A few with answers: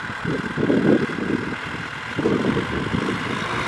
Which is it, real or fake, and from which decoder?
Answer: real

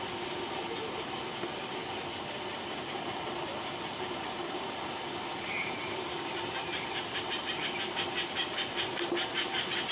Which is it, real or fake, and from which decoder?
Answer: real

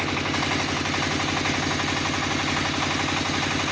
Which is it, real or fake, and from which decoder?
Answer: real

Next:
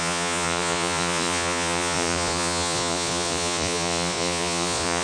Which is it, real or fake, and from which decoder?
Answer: fake, vocoder, Vocos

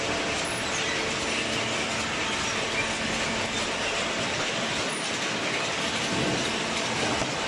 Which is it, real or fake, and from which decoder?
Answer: real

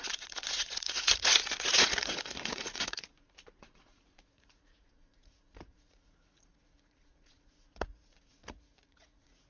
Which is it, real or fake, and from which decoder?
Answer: fake, vocoder, Vocos